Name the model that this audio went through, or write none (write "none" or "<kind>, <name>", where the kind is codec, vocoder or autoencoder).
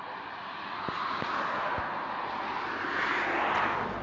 none